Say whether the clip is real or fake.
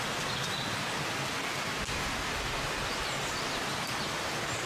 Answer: real